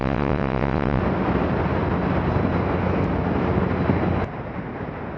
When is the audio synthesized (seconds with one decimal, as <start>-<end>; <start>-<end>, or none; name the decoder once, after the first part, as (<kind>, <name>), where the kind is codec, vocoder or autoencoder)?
0.0-1.0 (vocoder, WaveNeXt)